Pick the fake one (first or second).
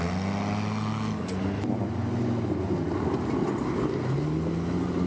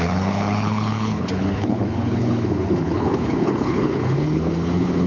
second